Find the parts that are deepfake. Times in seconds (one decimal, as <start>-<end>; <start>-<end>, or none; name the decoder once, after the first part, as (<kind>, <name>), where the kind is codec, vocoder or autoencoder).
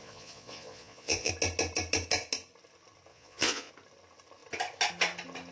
0.0-1.3 (vocoder, Vocos); 3.1-3.7